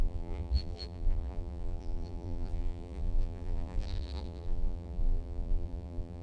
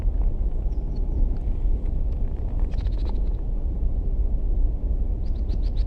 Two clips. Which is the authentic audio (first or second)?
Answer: second